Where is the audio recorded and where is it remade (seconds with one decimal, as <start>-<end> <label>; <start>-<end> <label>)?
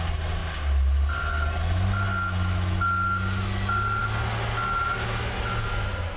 0.0-6.2 recorded